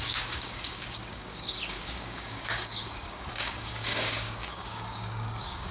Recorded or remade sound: remade